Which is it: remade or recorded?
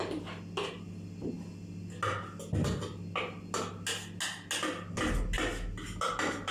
recorded